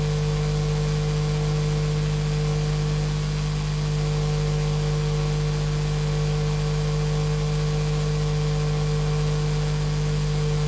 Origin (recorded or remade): recorded